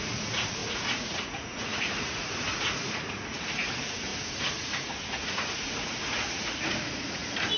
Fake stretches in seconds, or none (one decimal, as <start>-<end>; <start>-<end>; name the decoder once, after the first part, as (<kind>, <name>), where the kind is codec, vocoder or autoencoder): 0.0-7.6 (vocoder, Vocos)

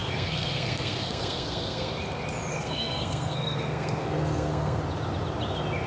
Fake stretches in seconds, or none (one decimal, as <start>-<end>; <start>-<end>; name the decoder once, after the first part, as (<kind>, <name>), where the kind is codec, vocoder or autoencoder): 0.0-1.9 (codec, SNAC); 2.5-4.8

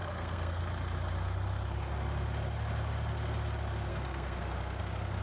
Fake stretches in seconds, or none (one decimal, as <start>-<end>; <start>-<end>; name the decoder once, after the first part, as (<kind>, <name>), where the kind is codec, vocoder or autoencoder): 0.0-0.6 (codec, SNAC); 3.9-4.8

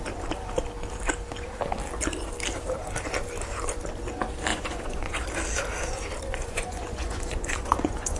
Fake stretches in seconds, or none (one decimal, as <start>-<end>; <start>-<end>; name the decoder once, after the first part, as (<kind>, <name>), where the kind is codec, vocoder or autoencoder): 4.5-5.2 (vocoder, Vocos); 6.3-8.2

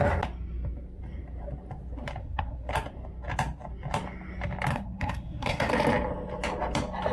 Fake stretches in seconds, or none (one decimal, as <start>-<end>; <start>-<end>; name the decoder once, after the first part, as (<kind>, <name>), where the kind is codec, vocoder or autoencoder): 2.2-2.7 (codec, SNAC); 4.7-5.7

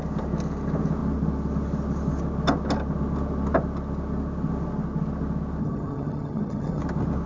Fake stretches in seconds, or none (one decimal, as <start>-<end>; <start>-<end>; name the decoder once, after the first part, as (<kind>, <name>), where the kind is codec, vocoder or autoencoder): 5.6-6.8 (vocoder, HiFi-GAN)

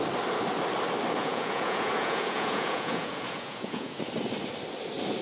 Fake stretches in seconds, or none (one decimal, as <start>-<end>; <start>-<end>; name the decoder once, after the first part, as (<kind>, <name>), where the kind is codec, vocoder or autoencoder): 1.2-4.0 (vocoder, Vocos)

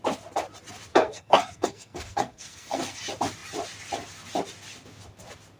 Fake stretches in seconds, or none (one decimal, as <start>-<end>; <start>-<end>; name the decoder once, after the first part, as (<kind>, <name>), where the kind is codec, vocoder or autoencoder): 0.9-3.0 (codec, SNAC)